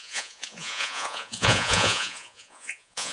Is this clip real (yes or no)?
no